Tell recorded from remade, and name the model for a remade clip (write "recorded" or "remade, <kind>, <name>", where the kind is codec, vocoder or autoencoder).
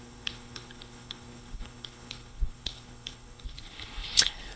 remade, codec, HILCodec